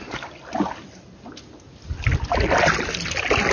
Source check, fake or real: real